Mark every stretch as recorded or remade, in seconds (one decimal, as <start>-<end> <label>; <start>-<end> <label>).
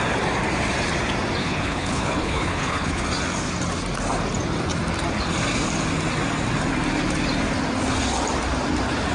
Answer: 0.0-1.4 recorded; 1.4-3.0 remade; 3.0-9.1 recorded